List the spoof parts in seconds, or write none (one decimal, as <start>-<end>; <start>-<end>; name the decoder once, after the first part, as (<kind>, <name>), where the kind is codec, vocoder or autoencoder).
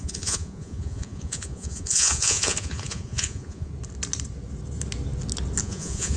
0.0-3.7 (vocoder, Vocos); 5.6-6.2